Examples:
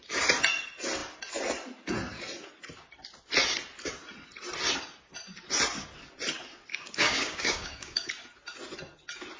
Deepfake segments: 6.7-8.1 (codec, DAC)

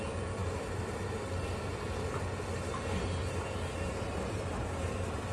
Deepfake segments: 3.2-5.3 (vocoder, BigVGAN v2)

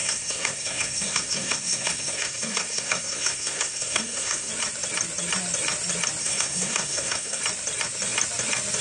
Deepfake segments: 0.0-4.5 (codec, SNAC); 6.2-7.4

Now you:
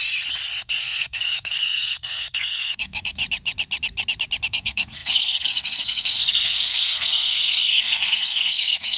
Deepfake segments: 0.6-3.2 (codec, SNAC); 4.5-9.0